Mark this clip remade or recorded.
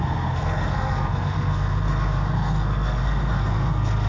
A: remade